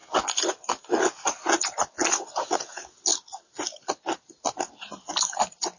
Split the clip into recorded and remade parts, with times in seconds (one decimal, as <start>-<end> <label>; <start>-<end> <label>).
0.0-5.8 recorded